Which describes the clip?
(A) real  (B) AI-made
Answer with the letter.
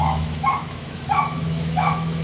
B